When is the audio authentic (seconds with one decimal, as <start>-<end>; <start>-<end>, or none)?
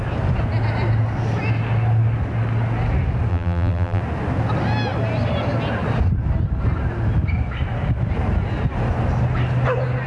0.0-3.3; 4.0-10.1